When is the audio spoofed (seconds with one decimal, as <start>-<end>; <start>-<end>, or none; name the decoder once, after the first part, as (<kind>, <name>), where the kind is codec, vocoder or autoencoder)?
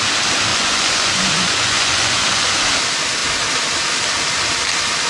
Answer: 0.5-2.5 (vocoder, Vocos)